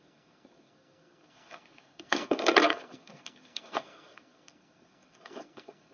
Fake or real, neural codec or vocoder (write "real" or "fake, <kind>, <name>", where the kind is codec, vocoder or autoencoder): fake, codec, SNAC